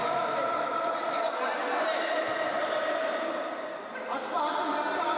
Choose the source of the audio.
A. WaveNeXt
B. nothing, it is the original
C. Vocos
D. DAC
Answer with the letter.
B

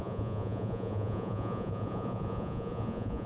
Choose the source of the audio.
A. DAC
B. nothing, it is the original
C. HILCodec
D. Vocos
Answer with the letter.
D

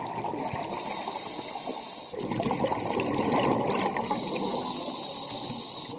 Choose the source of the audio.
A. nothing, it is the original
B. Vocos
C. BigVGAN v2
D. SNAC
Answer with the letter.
A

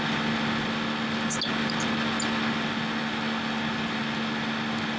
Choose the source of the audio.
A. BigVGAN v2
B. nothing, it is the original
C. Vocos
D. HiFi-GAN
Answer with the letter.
B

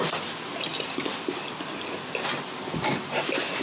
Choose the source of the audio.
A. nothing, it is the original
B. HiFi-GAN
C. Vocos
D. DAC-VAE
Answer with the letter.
A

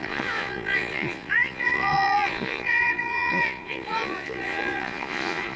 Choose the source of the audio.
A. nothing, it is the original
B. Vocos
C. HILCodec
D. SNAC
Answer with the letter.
B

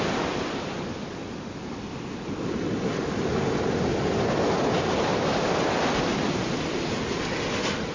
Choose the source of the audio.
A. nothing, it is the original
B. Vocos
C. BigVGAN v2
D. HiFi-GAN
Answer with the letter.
A